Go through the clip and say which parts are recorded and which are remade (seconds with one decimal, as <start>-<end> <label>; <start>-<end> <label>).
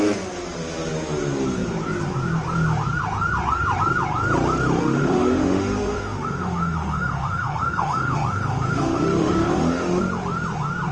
0.0-4.8 recorded; 4.8-10.0 remade; 10.0-10.9 recorded